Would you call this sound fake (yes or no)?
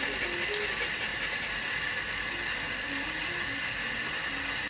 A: no